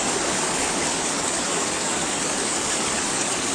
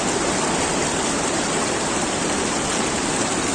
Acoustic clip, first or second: second